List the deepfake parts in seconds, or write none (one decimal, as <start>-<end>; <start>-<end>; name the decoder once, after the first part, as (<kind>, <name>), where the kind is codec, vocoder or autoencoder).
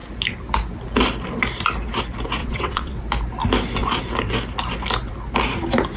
2.4-3.0 (vocoder, WaveNeXt)